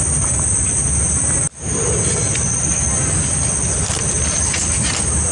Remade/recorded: recorded